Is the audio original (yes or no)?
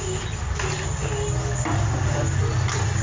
yes